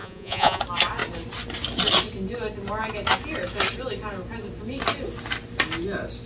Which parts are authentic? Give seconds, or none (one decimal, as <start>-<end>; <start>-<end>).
0.6-6.3